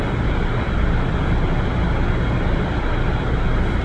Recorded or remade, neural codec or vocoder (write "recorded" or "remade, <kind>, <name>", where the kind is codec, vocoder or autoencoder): recorded